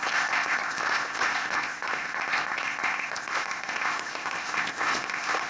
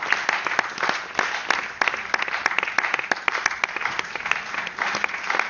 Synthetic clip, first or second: first